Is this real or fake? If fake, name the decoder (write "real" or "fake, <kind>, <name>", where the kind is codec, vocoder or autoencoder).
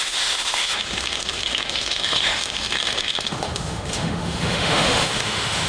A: fake, autoencoder, DAC-VAE